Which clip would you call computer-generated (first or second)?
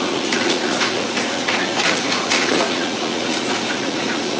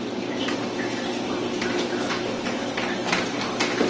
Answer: first